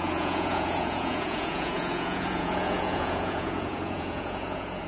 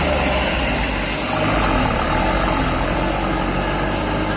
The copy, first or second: first